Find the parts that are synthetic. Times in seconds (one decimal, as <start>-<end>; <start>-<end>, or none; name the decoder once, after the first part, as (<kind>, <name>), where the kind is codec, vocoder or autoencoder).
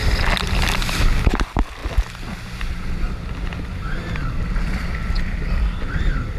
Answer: none